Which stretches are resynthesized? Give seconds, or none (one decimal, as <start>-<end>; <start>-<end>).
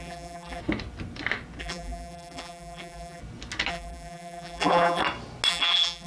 0.0-0.6; 1.6-3.2; 3.7-5.0; 5.5-6.1